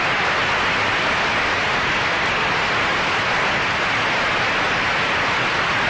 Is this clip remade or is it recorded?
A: recorded